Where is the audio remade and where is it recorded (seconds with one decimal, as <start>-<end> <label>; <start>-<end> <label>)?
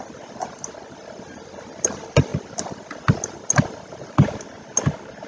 0.0-5.3 recorded